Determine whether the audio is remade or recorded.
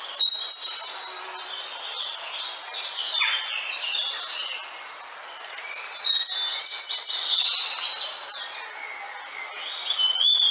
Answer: recorded